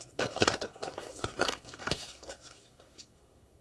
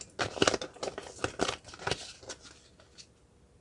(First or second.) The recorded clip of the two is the second